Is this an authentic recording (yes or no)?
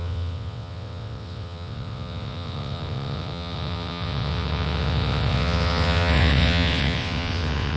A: no